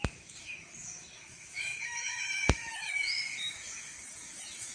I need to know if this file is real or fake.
fake